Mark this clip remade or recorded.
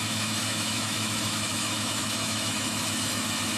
remade